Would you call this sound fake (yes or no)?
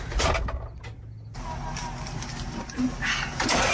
no